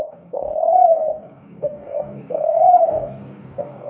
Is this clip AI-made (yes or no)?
yes